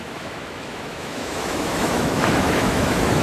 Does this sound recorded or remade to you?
remade